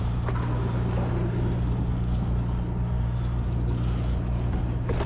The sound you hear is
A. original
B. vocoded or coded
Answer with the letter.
A